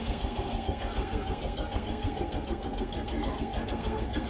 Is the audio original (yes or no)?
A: no